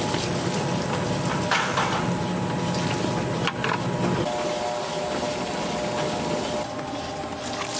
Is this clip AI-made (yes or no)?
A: no